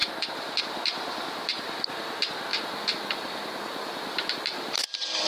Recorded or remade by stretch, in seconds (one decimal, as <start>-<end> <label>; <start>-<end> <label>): 0.0-2.5 recorded; 2.5-5.3 remade